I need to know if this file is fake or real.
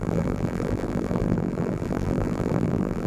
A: fake